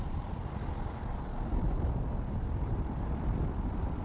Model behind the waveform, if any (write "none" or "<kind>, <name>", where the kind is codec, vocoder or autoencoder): none